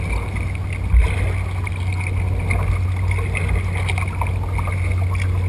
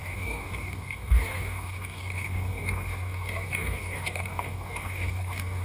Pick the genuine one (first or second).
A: first